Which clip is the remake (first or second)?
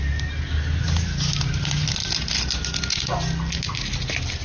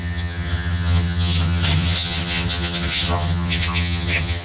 second